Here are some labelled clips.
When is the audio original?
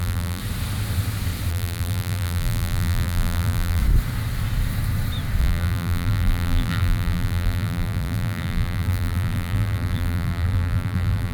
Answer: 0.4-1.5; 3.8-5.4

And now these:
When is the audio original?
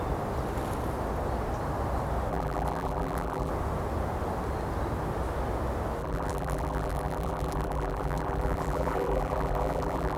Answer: 0.0-2.3; 3.5-6.0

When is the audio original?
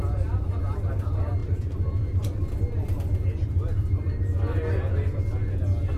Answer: 0.0-1.4; 2.2-3.4; 4.6-6.0